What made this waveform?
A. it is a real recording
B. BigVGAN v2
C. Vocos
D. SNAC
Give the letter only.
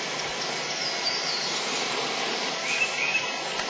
A